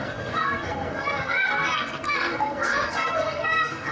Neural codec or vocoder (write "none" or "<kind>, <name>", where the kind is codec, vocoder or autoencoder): codec, SNAC